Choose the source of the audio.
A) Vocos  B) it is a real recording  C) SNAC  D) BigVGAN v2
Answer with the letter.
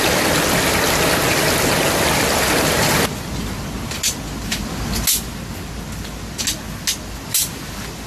B